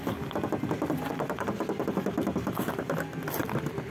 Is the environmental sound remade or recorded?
recorded